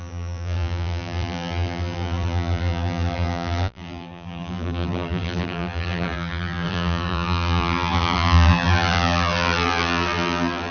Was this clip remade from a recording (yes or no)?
yes